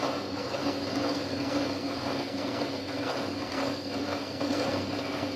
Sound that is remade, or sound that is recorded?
remade